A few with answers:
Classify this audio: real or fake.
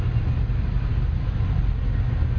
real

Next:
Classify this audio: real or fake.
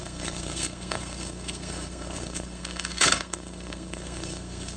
fake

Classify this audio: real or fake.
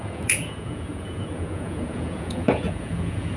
fake